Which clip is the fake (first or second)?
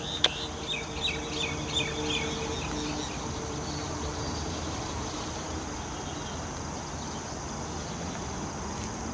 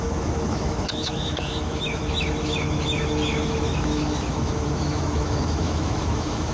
second